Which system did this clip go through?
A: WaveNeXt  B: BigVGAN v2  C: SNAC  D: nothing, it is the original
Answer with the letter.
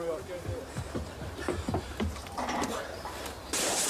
B